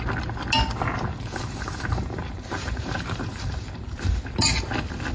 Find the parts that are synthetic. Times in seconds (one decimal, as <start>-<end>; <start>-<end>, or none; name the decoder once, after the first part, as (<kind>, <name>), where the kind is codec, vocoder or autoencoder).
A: 1.1-4.2 (vocoder, BigVGAN v2)